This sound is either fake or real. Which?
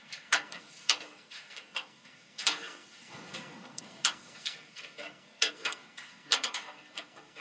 fake